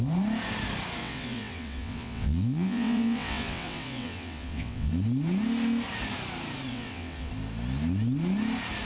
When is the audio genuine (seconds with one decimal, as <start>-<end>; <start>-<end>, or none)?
0.0-1.0; 4.9-6.7; 7.3-8.9